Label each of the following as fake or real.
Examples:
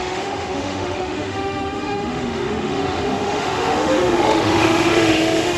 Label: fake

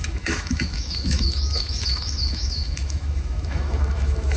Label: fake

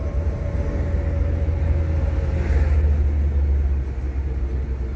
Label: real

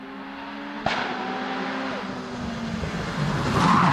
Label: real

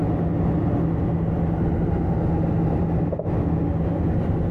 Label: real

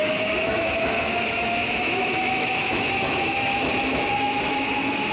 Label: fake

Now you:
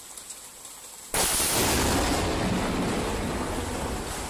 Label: real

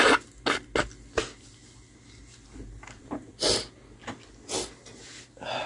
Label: real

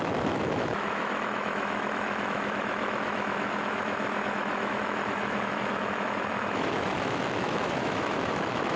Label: fake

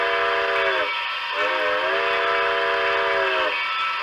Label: real